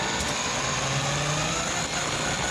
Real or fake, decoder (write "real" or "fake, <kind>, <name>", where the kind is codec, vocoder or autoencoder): real